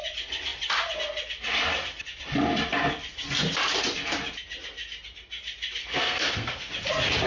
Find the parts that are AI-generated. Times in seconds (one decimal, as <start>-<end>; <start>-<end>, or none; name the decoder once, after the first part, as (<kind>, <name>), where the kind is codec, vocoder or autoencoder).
5.8-6.7 (codec, SNAC)

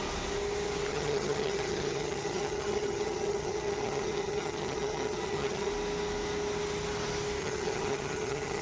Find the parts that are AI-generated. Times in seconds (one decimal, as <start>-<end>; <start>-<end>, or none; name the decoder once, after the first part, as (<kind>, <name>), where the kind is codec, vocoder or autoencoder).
0.9-5.7 (vocoder, HiFi-GAN); 7.4-8.6

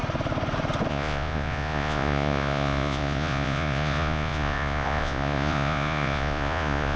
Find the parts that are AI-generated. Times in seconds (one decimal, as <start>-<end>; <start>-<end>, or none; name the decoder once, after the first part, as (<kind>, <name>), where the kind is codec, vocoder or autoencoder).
0.9-7.0 (vocoder, Vocos)

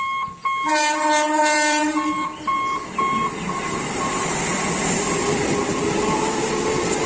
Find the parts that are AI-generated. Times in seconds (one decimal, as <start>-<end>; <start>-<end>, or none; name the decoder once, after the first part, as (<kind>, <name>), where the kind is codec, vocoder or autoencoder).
none

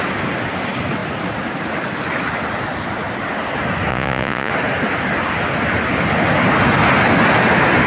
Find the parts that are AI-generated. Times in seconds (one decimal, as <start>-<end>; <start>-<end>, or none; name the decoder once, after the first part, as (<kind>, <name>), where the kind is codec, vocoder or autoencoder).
3.9-4.5 (vocoder, Vocos)

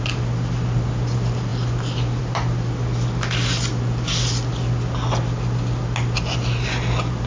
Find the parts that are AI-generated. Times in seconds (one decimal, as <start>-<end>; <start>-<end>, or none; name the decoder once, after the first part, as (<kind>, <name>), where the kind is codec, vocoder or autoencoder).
none

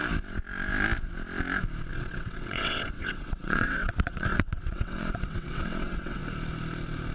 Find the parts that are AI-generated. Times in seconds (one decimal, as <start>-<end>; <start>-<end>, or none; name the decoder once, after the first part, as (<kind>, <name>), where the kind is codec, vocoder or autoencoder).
1.9-6.2 (vocoder, WaveNeXt)